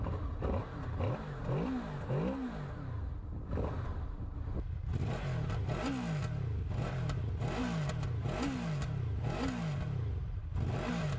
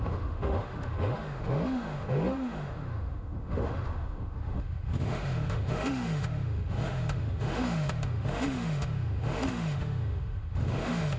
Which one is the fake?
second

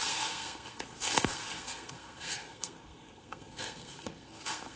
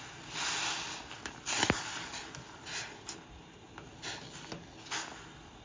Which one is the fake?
first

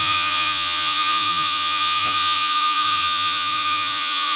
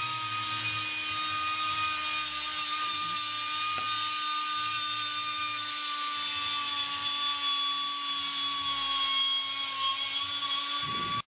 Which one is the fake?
first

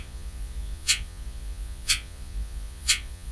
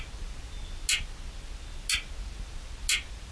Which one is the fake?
first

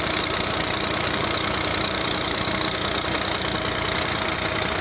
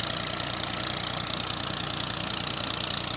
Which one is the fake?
first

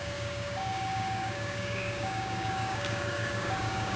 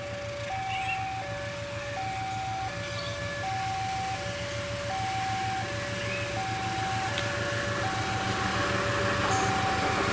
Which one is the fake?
first